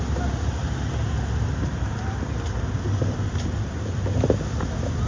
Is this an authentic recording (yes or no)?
yes